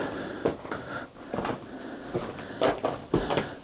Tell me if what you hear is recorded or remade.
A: recorded